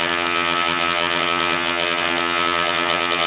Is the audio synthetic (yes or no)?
yes